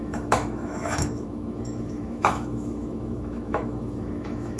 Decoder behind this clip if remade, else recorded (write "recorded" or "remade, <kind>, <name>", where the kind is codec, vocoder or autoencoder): remade, autoencoder, DAC-VAE